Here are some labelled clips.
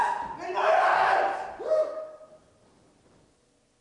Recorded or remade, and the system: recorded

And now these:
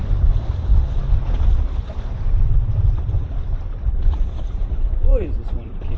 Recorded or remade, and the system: remade, vocoder, BigVGAN v2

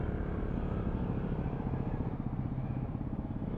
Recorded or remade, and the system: remade, vocoder, BigVGAN v2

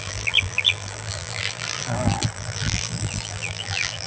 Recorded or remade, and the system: remade, vocoder, BigVGAN v2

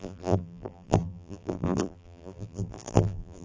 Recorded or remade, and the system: remade, vocoder, BigVGAN v2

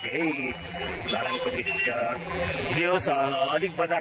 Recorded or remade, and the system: remade, vocoder, BigVGAN v2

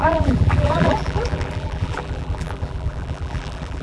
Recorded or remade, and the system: remade, vocoder, BigVGAN v2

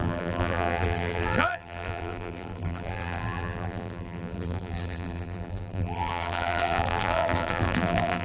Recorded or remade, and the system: remade, vocoder, BigVGAN v2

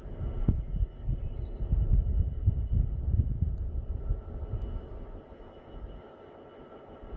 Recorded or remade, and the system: recorded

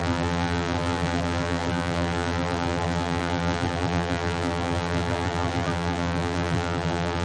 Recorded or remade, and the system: remade, vocoder, BigVGAN v2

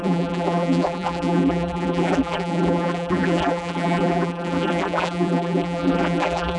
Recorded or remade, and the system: remade, vocoder, BigVGAN v2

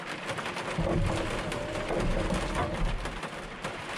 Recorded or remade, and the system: recorded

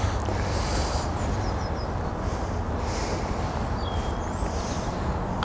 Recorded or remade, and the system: recorded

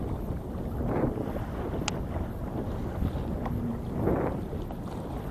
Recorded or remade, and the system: recorded